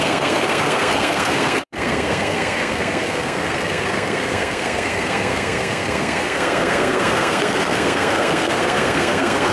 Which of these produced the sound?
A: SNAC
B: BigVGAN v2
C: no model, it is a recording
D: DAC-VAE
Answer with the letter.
A